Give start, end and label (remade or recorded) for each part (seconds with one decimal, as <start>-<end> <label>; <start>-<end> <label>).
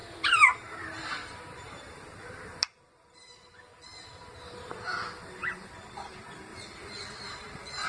0.0-1.4 recorded; 1.4-3.7 remade; 3.7-5.9 recorded; 5.9-6.5 remade; 6.5-7.3 recorded; 7.3-7.9 remade